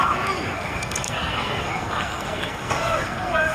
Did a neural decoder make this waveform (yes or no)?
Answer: yes